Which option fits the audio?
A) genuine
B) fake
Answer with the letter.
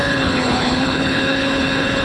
B